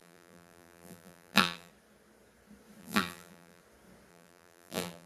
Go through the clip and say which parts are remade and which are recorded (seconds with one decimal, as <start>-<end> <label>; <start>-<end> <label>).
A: 0.0-1.7 remade; 1.7-2.8 recorded; 2.8-3.6 remade; 3.6-4.1 recorded; 4.1-5.1 remade